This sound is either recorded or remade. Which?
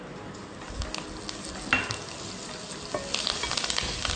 recorded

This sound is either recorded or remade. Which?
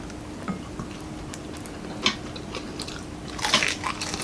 recorded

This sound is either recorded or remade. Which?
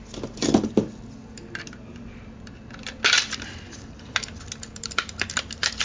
recorded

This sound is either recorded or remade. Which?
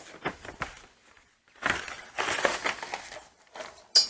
recorded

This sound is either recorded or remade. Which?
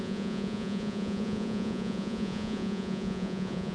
remade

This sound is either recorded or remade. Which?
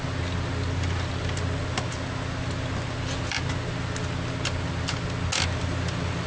recorded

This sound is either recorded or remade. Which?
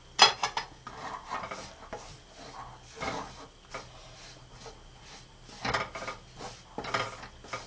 recorded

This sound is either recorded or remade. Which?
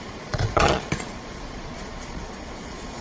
remade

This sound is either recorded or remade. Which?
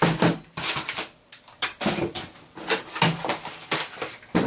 recorded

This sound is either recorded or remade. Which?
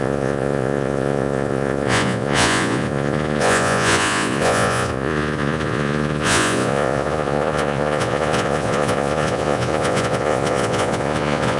remade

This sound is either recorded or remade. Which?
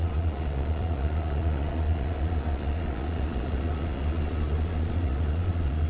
remade